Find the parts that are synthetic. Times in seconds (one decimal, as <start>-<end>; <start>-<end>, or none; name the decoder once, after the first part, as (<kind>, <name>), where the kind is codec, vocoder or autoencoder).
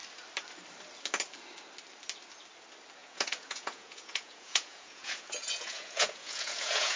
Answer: 3.0-7.0 (vocoder, Vocos)